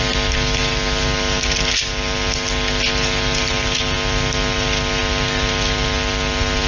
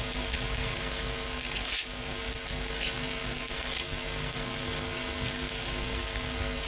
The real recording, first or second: first